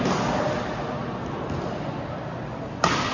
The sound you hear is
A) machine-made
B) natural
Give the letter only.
B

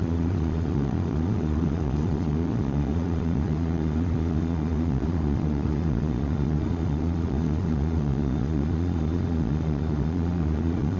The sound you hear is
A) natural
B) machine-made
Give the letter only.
B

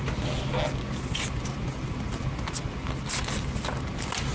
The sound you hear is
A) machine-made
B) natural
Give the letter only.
B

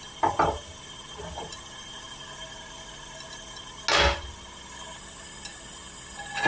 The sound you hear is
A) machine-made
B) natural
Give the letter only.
B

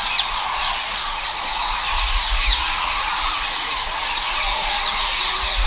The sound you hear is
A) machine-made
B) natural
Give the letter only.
A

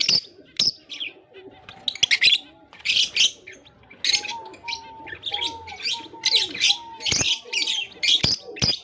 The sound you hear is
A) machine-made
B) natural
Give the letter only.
B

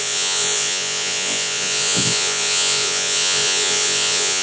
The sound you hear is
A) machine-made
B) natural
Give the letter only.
A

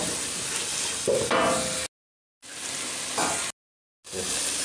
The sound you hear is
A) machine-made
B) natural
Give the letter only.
B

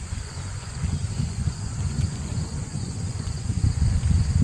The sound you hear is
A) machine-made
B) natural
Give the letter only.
A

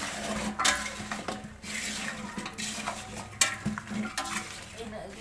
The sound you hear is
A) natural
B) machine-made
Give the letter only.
A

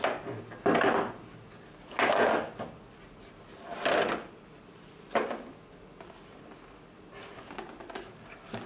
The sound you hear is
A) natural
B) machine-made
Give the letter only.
A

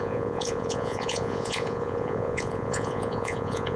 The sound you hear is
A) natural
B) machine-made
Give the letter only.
B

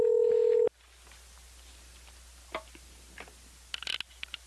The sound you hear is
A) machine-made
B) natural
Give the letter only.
B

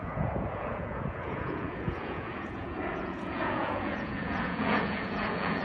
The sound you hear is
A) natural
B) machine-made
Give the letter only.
B